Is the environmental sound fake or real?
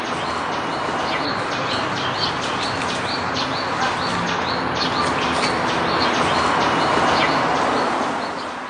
real